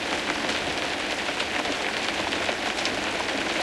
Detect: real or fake real